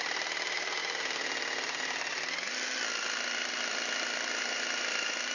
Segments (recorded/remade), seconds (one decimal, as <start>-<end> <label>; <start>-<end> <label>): 0.0-0.8 remade; 0.8-3.5 recorded; 3.5-5.3 remade